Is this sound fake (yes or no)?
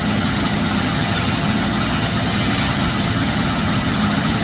yes